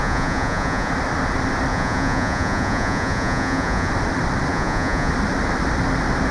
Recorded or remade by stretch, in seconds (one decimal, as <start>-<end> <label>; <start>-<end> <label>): 0.0-0.9 remade; 0.9-1.7 recorded; 1.7-3.9 remade; 3.9-4.5 recorded; 4.5-5.1 remade; 5.1-6.3 recorded